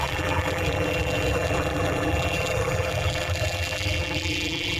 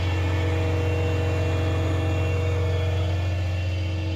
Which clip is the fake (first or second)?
first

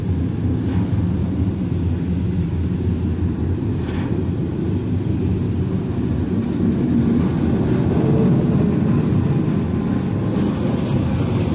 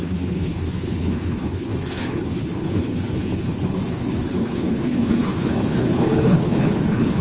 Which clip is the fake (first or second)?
second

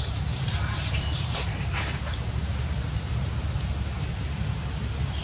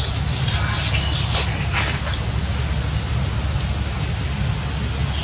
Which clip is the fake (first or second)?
first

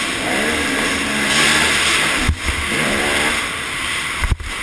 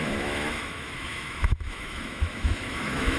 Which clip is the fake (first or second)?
second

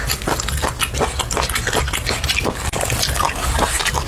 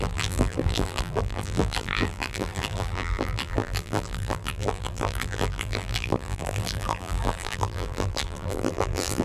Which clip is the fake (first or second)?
second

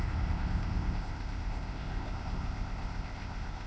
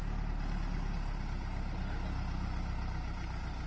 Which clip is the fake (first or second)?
first